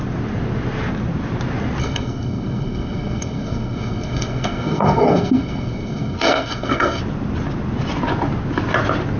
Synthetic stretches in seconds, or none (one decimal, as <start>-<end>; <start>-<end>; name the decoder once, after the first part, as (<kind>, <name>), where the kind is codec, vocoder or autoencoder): 1.8-7.0 (codec, SNAC)